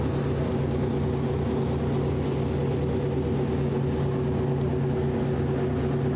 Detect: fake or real real